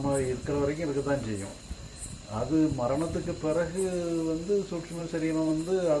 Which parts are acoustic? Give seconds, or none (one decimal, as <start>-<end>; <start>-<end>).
0.0-1.5; 2.2-6.0